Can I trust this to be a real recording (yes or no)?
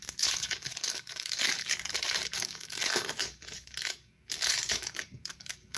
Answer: no